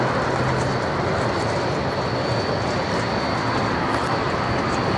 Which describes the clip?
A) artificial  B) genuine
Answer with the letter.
B